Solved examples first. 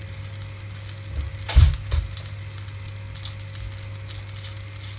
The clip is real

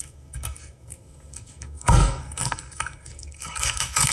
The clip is fake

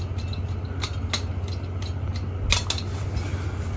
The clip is real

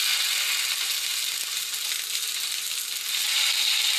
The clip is real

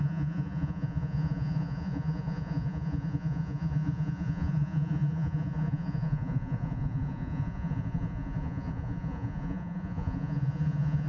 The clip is fake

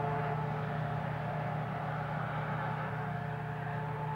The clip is real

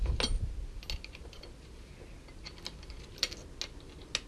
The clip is real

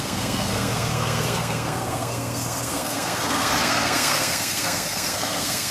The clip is fake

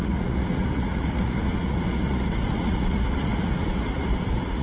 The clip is fake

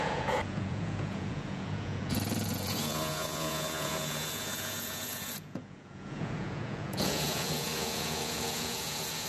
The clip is fake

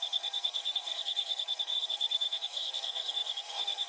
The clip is fake